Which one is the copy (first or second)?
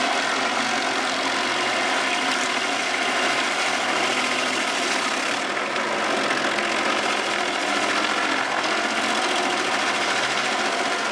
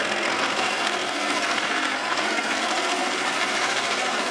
second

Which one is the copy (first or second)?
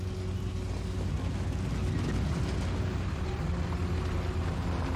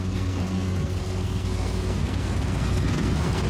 second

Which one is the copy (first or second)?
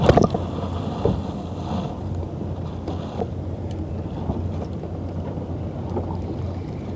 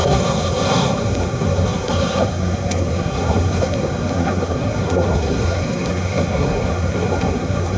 second